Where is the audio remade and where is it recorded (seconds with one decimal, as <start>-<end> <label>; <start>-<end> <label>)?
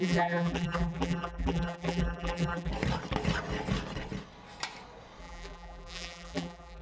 0.0-2.7 remade; 2.7-5.2 recorded; 5.2-6.8 remade